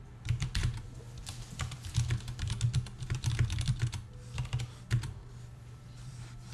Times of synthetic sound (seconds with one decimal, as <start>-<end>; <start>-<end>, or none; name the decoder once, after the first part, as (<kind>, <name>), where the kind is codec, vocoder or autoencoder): none